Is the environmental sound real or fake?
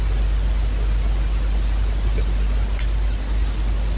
real